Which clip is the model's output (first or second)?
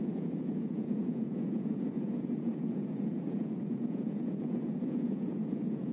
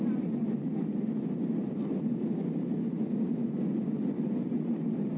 first